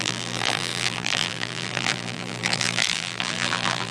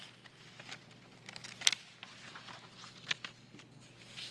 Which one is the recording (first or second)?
second